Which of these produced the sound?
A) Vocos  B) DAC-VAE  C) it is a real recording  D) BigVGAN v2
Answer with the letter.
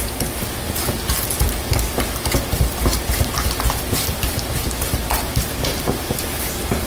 C